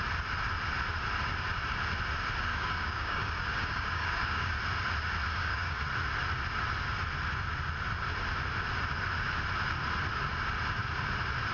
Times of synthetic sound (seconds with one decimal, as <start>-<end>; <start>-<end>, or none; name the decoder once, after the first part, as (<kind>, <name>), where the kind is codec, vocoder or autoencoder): 2.5-4.5 (codec, DAC); 5.3-5.8